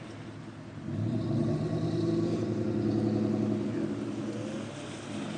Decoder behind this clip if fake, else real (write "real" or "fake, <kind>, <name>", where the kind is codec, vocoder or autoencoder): real